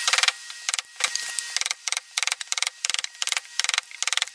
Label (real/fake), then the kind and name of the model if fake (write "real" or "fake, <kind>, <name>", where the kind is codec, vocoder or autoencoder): real